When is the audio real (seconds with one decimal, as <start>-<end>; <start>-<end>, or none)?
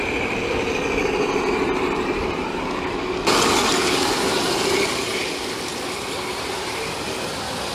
0.0-7.7